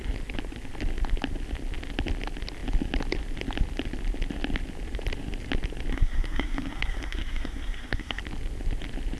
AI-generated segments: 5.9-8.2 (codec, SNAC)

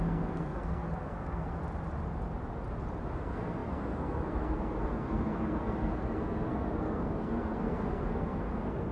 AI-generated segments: 0.0-1.6 (codec, SNAC); 3.2-8.9